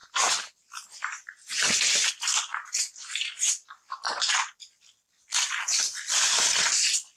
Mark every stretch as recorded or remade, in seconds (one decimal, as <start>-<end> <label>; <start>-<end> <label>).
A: 0.0-7.2 recorded